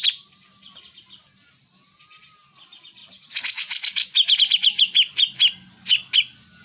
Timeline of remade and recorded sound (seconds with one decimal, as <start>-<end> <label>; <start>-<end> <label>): 0.0-6.6 recorded